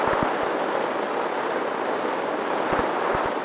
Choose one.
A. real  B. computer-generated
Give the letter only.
A